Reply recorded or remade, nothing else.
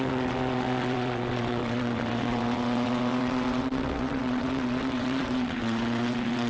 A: remade